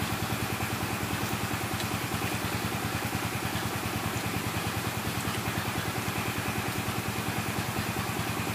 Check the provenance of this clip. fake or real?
real